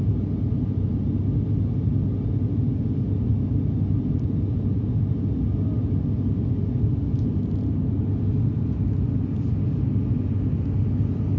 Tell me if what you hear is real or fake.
real